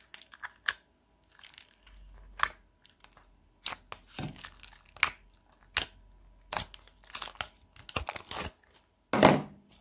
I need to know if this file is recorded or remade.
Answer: recorded